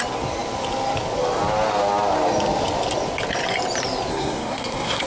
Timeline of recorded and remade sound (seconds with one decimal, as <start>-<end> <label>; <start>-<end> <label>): 0.0-4.1 recorded; 4.1-5.1 remade